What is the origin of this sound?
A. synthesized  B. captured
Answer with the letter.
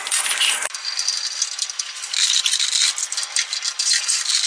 B